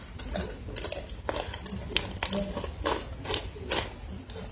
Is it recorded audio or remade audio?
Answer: recorded